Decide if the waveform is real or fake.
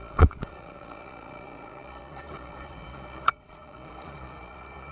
fake